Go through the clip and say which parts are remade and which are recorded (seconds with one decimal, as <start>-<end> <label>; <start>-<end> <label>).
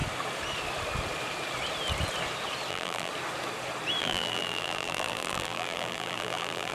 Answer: 0.0-2.7 recorded; 2.7-3.1 remade; 3.1-4.0 recorded; 4.0-6.7 remade